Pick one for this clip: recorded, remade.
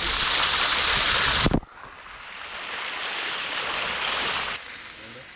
recorded